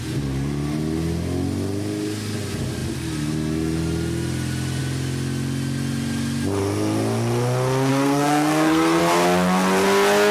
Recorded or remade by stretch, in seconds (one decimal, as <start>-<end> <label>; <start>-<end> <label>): 0.0-7.9 recorded; 7.9-9.0 remade; 9.0-10.3 recorded